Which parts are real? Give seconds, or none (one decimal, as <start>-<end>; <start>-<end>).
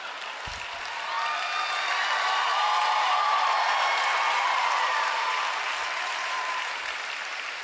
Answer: 0.0-2.5; 7.0-7.6